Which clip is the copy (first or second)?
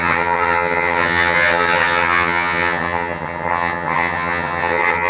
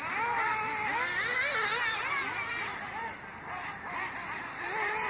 first